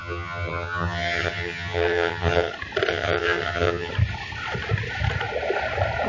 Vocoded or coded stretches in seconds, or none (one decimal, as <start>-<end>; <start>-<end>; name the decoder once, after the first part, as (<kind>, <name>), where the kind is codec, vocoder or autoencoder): 0.0-2.5 (vocoder, HiFi-GAN); 2.9-3.9